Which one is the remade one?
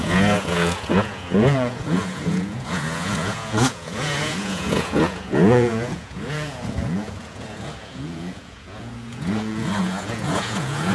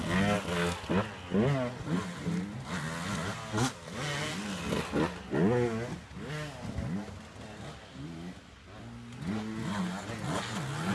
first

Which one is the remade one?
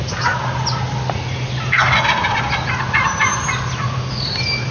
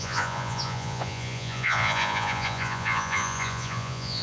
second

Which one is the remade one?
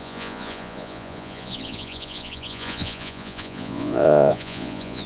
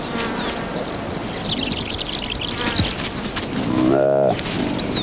first